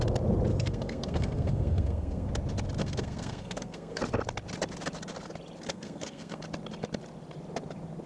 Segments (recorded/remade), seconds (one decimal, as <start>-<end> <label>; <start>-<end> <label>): 0.0-0.5 recorded; 0.5-2.3 remade; 2.3-2.8 recorded; 2.8-4.0 remade; 4.0-5.7 recorded; 5.7-6.4 remade; 6.4-8.1 recorded